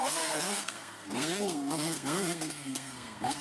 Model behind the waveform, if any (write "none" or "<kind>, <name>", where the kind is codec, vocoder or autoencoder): codec, SNAC